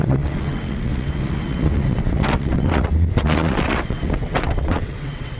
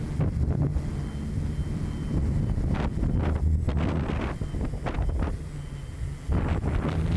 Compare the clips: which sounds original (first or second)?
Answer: second